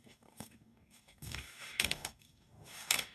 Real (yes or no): no